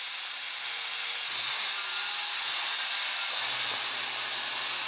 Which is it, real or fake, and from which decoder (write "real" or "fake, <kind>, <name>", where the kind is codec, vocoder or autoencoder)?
real